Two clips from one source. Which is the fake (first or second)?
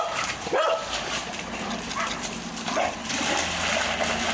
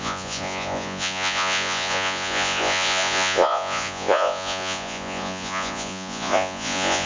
second